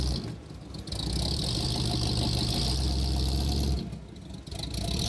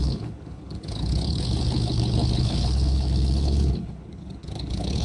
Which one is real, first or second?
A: first